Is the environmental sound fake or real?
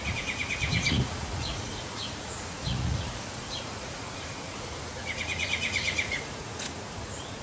fake